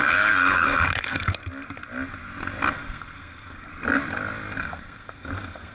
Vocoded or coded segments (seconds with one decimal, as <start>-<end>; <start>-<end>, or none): 0.0-1.4; 2.7-3.7; 4.6-5.7